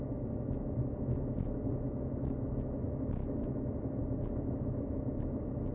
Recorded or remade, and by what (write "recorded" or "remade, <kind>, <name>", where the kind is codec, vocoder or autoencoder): remade, autoencoder, DAC-VAE